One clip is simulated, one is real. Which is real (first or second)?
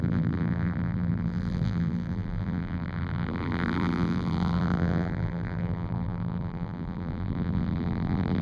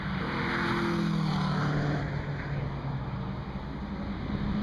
second